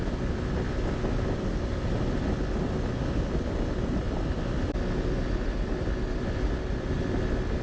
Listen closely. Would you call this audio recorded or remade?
recorded